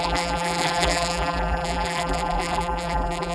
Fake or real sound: fake